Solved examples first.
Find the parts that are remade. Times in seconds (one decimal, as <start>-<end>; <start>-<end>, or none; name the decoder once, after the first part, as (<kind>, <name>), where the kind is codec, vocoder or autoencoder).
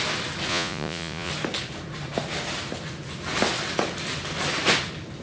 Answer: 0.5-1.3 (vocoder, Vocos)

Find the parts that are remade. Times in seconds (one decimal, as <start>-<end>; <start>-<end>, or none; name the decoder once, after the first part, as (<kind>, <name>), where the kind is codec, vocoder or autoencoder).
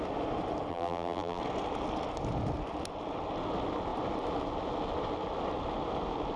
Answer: 0.7-1.4 (vocoder, BigVGAN v2)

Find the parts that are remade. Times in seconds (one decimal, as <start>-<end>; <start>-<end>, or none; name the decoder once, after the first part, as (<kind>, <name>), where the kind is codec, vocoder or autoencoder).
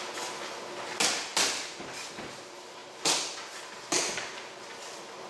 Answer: none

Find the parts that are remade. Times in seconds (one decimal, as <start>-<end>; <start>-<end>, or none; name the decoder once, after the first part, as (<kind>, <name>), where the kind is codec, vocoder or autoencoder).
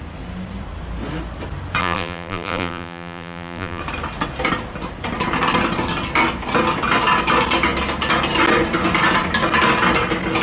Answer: 1.8-3.8 (vocoder, BigVGAN v2)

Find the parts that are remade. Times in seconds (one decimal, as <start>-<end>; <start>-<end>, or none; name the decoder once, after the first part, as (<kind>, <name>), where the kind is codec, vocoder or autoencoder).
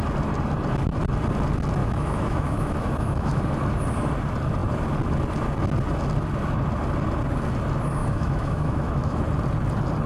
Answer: 1.8-3.4 (autoencoder, DAC-VAE); 8.0-9.2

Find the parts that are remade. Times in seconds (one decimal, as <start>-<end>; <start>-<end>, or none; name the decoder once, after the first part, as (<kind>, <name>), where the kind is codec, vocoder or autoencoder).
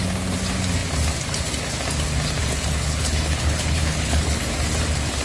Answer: 2.4-4.4 (codec, HILCodec)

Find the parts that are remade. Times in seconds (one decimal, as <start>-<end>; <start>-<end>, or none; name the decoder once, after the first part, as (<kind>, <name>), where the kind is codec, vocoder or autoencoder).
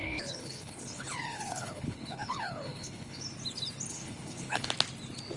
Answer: 0.0-3.2 (codec, HILCodec); 3.9-4.7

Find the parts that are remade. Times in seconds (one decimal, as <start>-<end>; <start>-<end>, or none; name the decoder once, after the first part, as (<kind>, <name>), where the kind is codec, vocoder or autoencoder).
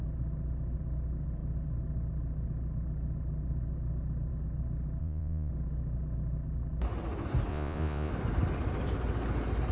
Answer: 5.0-5.5 (vocoder, Vocos); 7.5-8.1